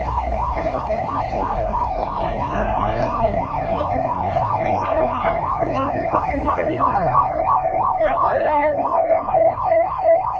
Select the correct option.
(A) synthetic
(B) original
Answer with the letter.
A